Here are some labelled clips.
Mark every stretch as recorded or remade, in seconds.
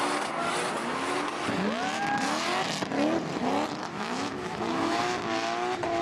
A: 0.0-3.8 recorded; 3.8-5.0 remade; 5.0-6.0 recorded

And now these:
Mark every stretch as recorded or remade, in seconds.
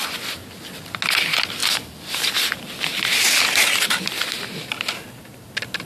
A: 0.0-5.9 recorded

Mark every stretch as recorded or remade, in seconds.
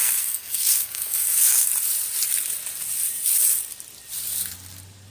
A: 0.0-1.7 remade; 1.7-5.1 recorded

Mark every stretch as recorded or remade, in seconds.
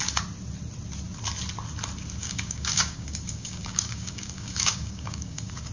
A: 0.0-2.2 recorded; 2.2-5.7 remade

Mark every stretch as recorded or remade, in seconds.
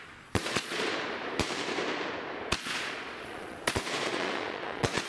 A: 0.0-0.9 remade; 0.9-2.6 recorded; 2.6-5.1 remade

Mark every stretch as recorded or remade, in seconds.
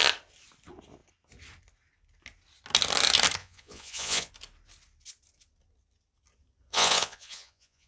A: 0.0-3.4 recorded; 3.4-4.3 remade; 4.3-6.7 recorded; 6.7-7.9 remade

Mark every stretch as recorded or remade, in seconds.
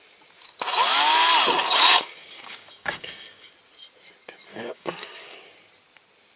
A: 0.0-1.6 recorded; 1.6-3.5 remade; 3.5-4.5 recorded; 4.5-5.4 remade; 5.4-6.4 recorded